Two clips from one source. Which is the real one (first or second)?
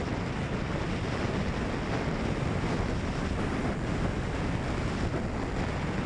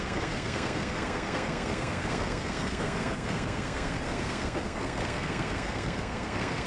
first